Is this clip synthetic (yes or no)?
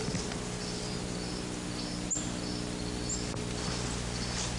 no